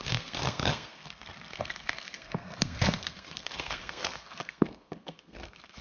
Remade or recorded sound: remade